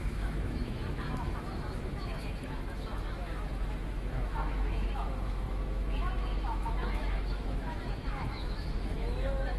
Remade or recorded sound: remade